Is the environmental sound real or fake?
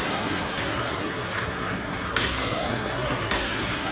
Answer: fake